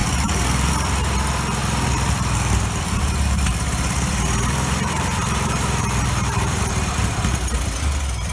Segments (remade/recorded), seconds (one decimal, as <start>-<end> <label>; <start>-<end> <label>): 0.0-0.7 remade; 0.7-1.6 recorded; 1.6-6.6 remade; 6.6-8.3 recorded